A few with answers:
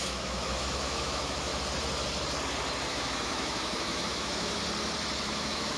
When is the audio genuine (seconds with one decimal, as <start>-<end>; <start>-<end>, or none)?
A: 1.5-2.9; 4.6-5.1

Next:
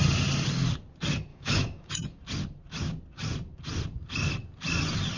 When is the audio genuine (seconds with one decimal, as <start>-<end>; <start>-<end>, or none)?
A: 0.0-1.3; 2.2-5.2

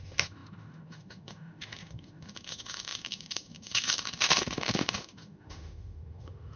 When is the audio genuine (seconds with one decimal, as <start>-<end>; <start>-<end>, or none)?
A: none

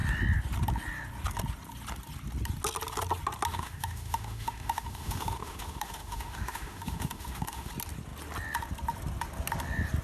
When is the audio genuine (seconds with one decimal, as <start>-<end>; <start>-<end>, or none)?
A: 0.0-3.5; 7.7-10.0

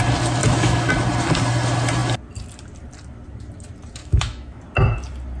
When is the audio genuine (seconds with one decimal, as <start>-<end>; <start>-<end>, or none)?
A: 0.0-0.4; 0.9-4.0; 4.6-5.4

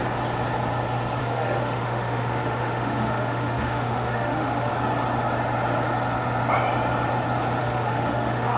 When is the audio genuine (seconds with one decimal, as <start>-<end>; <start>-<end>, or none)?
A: 0.0-1.2; 4.7-7.6